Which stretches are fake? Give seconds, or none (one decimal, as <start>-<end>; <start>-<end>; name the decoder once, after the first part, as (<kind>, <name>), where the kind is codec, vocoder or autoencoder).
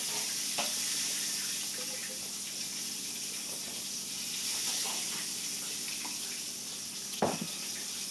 none